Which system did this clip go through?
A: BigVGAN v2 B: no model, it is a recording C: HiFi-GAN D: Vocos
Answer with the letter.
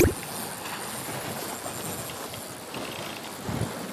B